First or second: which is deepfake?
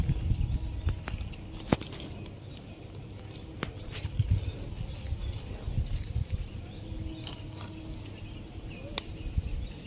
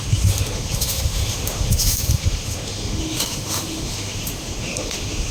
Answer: second